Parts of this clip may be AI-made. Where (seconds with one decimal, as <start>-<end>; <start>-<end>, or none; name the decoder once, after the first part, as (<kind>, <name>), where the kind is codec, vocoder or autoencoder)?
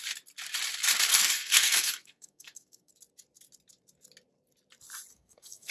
1.1-2.9 (codec, SNAC); 5.1-5.7